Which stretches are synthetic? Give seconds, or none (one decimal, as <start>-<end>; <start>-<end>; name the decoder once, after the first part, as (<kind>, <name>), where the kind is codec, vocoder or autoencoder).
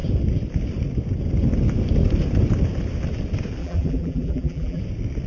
3.6-4.8 (vocoder, BigVGAN v2)